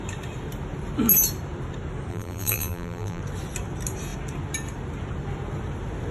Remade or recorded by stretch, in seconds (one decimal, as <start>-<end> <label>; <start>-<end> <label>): 0.0-2.1 recorded; 2.1-3.2 remade; 3.2-6.1 recorded